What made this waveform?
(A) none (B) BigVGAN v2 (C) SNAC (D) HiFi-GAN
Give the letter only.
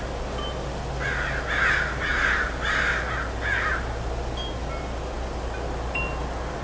A